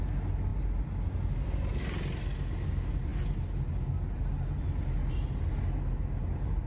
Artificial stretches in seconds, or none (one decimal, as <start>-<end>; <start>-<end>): none